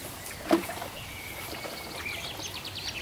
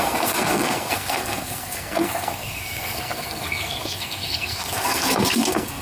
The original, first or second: first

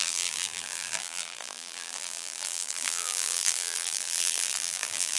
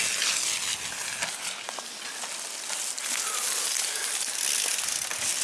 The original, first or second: second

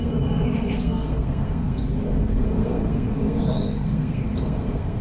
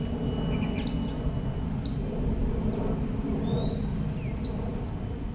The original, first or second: second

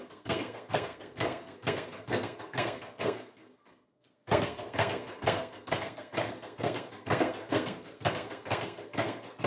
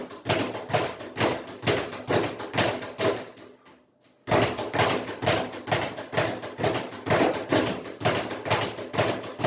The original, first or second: second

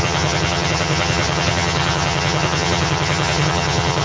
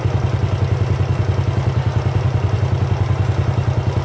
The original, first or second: second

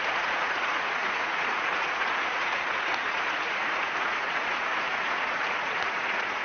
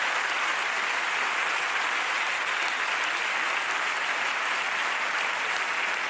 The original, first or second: second